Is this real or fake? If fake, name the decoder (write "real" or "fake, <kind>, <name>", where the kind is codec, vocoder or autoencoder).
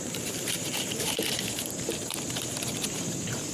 fake, vocoder, BigVGAN v2